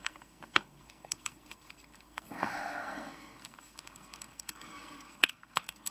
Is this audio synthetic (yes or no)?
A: yes